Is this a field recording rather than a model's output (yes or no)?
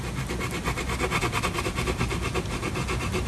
yes